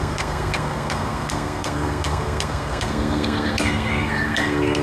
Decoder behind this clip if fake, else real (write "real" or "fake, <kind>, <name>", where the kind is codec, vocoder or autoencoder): fake, codec, SNAC